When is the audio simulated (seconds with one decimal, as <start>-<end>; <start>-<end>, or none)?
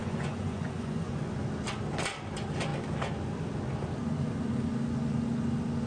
0.0-1.2